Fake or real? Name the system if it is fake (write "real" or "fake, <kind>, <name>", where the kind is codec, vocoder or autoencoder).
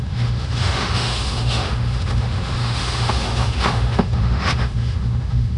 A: fake, autoencoder, DAC-VAE